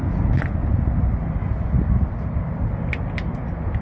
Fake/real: real